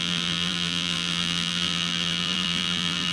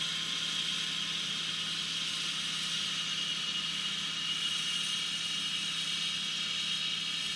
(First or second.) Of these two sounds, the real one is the second